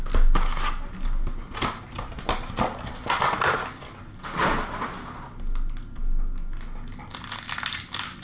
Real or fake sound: real